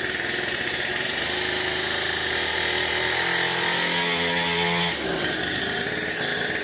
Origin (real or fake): real